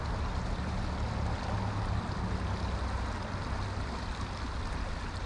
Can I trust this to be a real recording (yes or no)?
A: yes